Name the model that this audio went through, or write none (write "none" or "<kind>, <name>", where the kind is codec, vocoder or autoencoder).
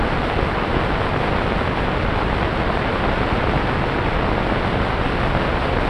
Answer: none